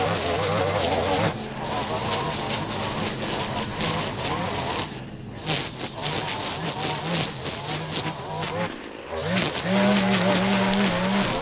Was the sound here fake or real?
real